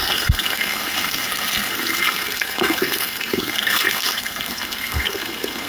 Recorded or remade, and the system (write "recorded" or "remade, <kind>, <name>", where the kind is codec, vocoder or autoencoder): remade, codec, SNAC